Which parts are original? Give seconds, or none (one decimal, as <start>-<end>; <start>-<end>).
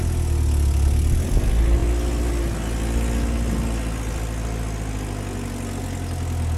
0.0-6.6